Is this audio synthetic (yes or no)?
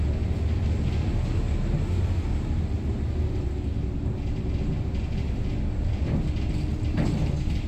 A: no